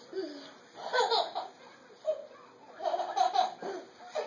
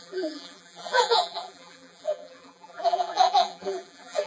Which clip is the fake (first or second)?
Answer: second